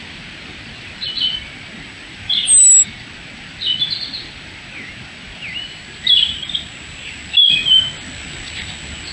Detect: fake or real real